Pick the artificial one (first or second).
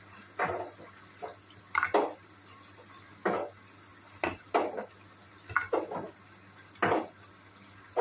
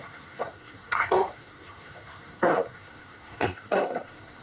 second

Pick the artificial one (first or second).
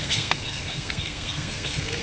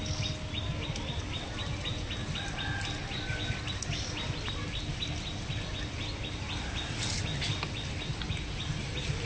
first